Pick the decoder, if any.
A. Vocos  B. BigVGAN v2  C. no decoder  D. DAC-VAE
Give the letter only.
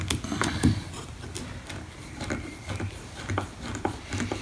C